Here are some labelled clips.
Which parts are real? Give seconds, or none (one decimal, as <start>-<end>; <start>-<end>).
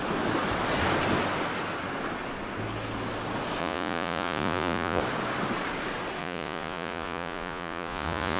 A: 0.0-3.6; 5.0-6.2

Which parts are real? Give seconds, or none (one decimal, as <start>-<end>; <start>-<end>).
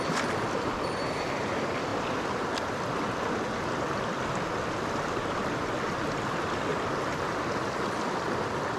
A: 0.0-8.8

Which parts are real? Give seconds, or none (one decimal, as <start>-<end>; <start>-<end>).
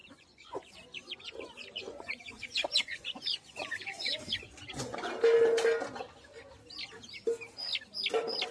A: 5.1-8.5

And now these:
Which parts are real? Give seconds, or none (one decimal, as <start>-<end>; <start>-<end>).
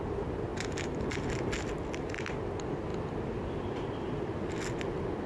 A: 0.0-5.3